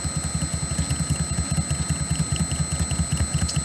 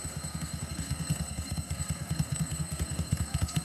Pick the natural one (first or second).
first